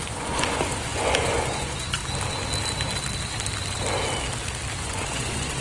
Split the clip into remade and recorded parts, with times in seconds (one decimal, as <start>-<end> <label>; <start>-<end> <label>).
0.0-2.0 remade; 2.0-4.8 recorded; 4.8-5.6 remade